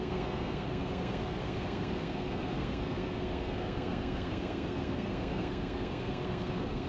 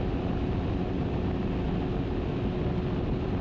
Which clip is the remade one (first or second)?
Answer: first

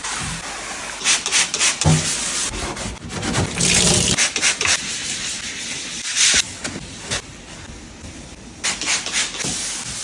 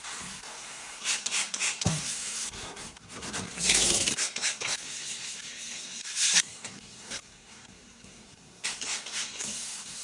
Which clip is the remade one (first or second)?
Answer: second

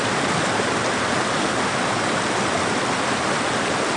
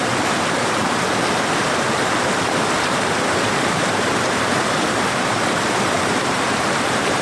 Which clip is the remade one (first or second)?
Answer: second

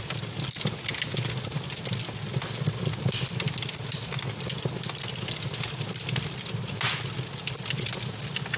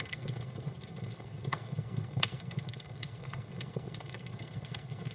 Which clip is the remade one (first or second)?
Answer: second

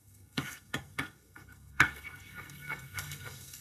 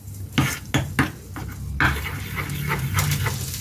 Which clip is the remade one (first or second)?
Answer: first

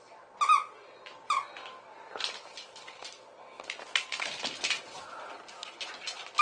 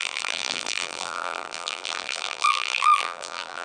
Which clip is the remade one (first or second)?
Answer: second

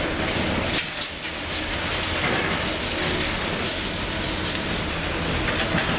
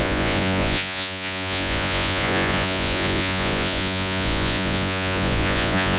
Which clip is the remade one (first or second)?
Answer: second